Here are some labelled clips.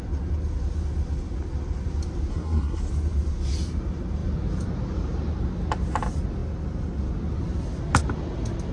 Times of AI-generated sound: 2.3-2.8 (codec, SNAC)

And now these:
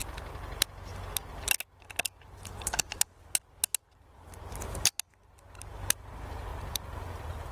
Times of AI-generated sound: 3.7-4.5 (vocoder, BigVGAN v2); 6.5-7.5